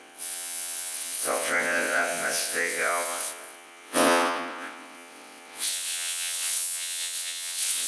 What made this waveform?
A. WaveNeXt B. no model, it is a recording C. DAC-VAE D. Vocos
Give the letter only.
A